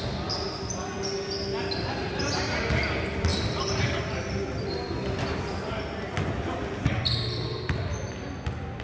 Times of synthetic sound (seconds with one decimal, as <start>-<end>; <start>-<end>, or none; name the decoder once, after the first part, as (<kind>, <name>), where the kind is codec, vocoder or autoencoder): 1.9-2.6 (vocoder, BigVGAN v2); 3.3-4.0